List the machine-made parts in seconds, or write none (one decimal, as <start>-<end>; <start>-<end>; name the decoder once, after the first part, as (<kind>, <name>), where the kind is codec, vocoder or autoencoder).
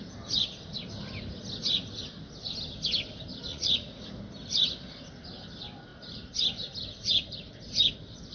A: 3.5-4.1 (vocoder, Vocos)